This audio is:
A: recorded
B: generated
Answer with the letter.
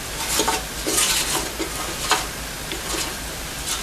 A